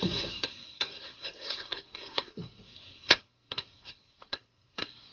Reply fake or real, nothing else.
fake